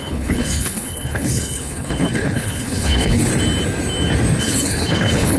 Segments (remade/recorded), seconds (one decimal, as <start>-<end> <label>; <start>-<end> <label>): 0.0-3.3 remade; 3.3-4.4 recorded; 4.4-5.4 remade

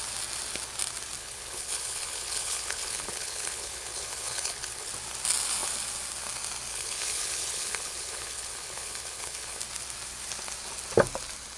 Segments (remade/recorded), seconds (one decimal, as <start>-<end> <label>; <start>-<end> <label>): 0.0-1.2 recorded; 1.2-4.9 remade; 4.9-6.7 recorded; 6.7-9.6 remade; 9.6-11.6 recorded

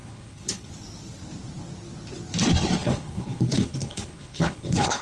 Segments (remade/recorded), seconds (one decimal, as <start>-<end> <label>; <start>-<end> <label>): 0.0-0.7 remade; 0.7-2.8 recorded; 2.8-5.0 remade

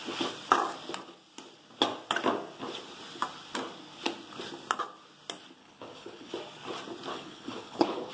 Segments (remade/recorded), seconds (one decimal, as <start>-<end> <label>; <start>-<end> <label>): 0.0-5.6 recorded; 5.6-6.3 remade; 6.3-7.1 recorded; 7.1-8.1 remade

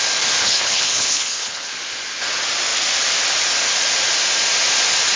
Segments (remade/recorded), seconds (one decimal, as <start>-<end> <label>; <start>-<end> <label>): 0.0-0.4 recorded; 0.4-1.7 remade; 1.7-5.2 recorded

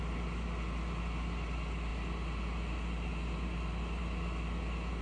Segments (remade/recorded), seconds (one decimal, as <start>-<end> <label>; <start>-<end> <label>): 0.0-5.0 recorded